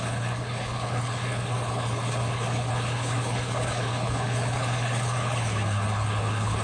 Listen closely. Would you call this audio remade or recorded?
remade